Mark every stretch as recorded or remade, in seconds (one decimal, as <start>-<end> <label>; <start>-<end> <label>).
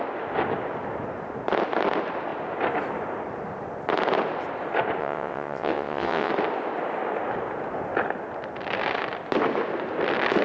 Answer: 0.0-5.0 recorded; 5.0-6.3 remade; 6.3-10.4 recorded